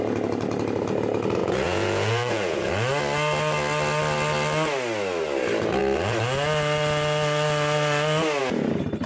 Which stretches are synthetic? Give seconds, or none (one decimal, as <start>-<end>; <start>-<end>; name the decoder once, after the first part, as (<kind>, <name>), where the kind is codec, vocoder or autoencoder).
1.4-2.7 (vocoder, Vocos)